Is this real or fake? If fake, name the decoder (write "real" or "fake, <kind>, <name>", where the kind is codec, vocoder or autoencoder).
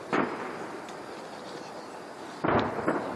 real